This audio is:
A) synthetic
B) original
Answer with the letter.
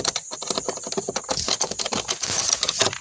B